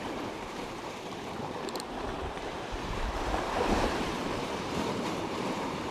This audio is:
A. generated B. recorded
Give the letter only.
A